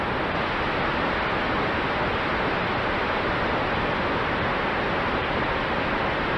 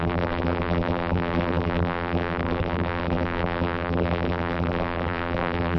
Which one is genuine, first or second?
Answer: first